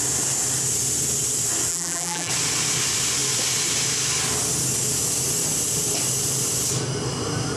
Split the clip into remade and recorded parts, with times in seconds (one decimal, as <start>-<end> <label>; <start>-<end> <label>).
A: 0.0-1.7 recorded; 1.7-2.3 remade; 2.3-7.6 recorded